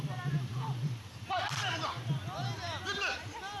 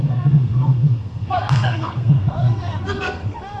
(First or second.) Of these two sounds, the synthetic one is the second